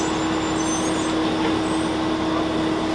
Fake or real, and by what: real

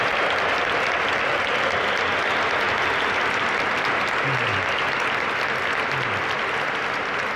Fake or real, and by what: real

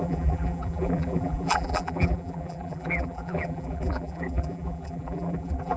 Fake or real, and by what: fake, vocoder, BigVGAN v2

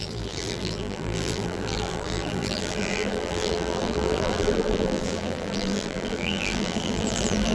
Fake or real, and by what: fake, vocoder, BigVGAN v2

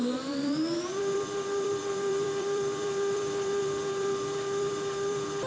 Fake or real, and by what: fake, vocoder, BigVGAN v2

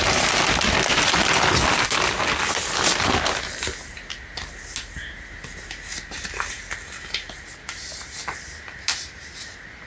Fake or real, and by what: real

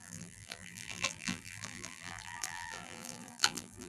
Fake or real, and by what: fake, vocoder, BigVGAN v2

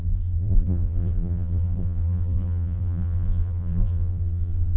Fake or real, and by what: fake, vocoder, BigVGAN v2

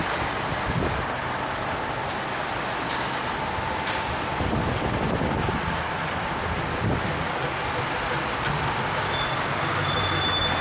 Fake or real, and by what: real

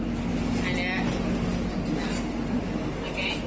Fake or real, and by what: real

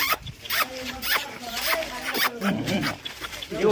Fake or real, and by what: fake, vocoder, BigVGAN v2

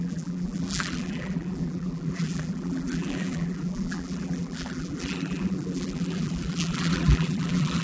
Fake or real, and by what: fake, vocoder, BigVGAN v2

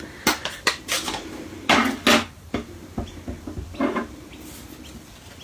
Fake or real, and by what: real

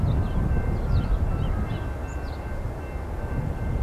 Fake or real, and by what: real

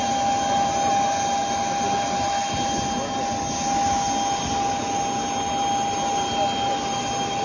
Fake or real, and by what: real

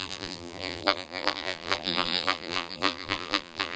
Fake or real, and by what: fake, vocoder, BigVGAN v2